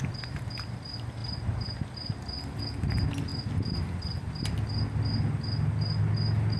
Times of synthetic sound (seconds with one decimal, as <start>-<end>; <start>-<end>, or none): none